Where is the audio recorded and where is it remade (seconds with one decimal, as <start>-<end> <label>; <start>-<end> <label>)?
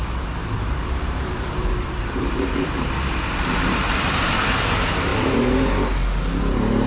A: 0.0-0.4 recorded; 0.4-4.5 remade; 4.5-6.9 recorded